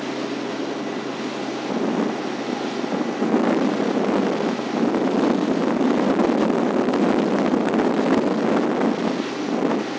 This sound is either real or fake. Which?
real